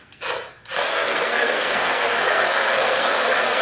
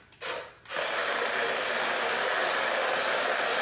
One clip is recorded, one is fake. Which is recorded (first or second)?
second